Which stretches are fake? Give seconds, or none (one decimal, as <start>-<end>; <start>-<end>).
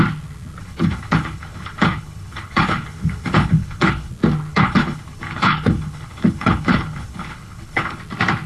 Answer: 0.6-4.1; 4.5-8.0